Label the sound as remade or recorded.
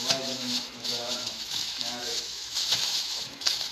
remade